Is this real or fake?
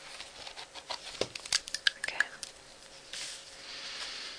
fake